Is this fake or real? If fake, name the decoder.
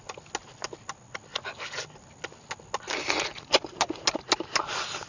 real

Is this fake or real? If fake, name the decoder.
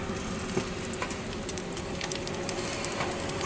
real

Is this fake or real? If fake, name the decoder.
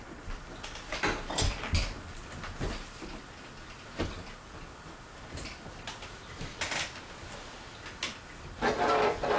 real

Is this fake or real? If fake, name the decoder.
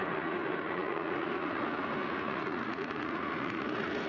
fake, vocoder, Vocos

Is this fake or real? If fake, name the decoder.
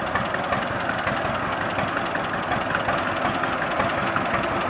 real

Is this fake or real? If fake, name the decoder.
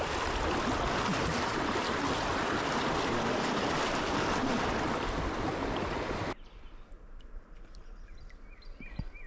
real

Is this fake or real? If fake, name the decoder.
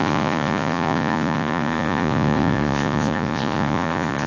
fake, vocoder, Vocos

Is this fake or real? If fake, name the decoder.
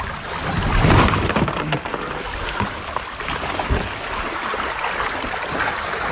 real